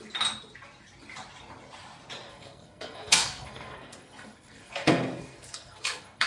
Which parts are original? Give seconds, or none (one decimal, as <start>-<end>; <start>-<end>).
0.0-2.3